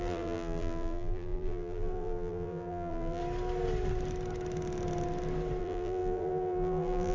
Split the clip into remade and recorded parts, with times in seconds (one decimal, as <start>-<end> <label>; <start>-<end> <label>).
0.0-3.2 remade; 3.2-5.6 recorded; 5.6-7.1 remade